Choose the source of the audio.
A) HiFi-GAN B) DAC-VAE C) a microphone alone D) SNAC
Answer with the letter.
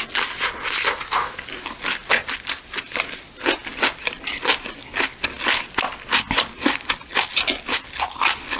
C